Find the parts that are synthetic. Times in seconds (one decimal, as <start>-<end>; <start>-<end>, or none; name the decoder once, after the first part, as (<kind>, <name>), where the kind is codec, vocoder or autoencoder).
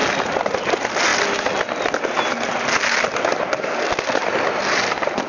none